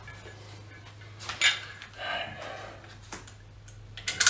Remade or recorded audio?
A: recorded